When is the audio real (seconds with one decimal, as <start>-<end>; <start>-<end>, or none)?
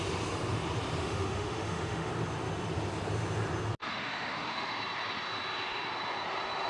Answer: 0.0-1.0; 2.1-3.8; 4.7-6.7